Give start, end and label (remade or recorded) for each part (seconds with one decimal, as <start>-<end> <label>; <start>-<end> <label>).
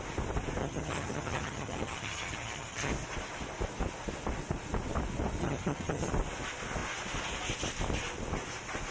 0.0-0.6 recorded; 0.6-2.9 remade; 2.9-5.4 recorded; 5.4-6.1 remade; 6.1-8.9 recorded